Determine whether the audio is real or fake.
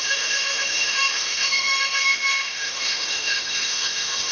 fake